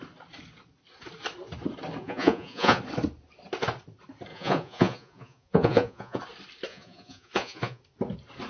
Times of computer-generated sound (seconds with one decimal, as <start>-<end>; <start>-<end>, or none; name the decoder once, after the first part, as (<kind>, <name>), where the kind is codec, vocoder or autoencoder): 2.0-2.8 (vocoder, Vocos); 4.3-6.2; 6.7-7.8